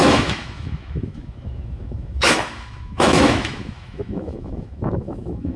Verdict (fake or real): fake